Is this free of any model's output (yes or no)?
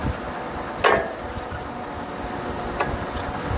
yes